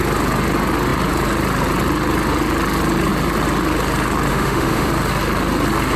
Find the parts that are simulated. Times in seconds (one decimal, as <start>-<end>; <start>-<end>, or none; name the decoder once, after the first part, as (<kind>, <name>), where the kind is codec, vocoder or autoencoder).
4.3-4.9 (autoencoder, DAC-VAE)